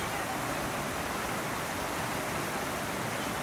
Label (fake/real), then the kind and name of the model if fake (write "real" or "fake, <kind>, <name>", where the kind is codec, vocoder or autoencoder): real